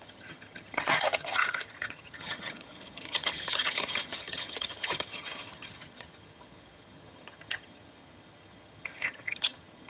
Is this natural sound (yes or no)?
no